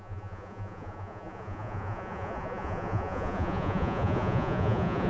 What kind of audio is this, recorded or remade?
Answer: remade